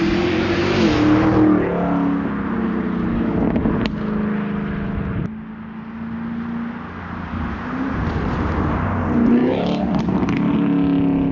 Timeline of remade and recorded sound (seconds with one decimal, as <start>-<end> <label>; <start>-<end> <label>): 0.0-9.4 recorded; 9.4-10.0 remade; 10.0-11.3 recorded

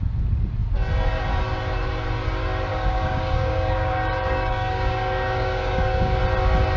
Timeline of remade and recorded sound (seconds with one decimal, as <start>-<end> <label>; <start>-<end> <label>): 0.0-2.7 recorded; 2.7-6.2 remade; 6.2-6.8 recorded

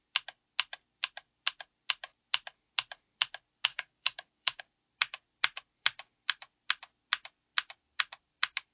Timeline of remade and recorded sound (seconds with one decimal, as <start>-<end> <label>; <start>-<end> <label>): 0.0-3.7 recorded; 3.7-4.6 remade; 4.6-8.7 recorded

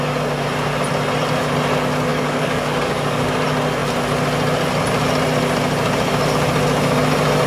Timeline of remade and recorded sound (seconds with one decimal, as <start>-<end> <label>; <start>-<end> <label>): 0.0-2.1 recorded; 2.1-3.3 remade; 3.3-7.5 recorded

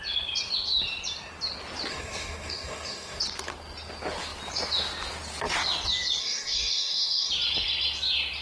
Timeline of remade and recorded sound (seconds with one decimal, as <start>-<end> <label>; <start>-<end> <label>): 0.0-1.9 recorded; 1.9-3.2 remade; 3.2-6.2 recorded; 6.2-7.3 remade; 7.3-8.4 recorded

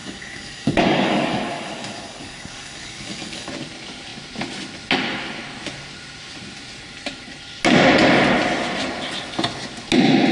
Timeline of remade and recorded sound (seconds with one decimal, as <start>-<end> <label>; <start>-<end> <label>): 0.0-3.5 remade; 3.5-10.3 recorded